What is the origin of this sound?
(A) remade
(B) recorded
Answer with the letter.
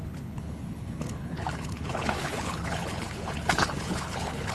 A